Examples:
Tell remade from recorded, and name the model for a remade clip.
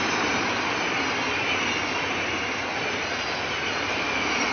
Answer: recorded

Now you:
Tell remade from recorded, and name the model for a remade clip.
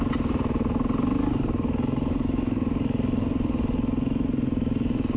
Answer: recorded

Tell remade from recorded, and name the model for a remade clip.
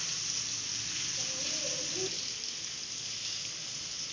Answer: recorded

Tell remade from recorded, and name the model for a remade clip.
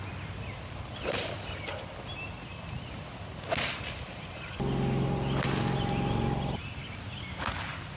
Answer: recorded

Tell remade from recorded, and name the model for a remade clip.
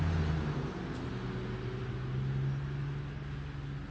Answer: recorded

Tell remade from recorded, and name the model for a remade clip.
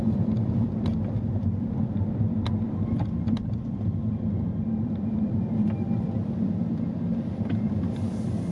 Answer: remade, vocoder, BigVGAN v2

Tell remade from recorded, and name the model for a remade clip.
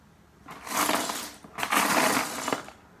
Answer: recorded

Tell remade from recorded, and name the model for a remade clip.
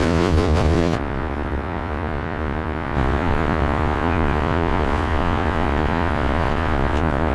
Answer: remade, vocoder, Vocos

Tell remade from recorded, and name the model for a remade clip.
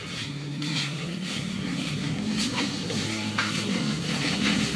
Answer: remade, codec, SNAC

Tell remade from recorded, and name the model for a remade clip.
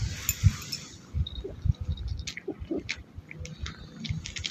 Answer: recorded